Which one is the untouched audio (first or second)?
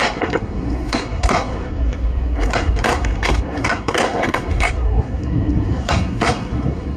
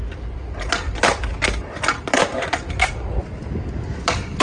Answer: second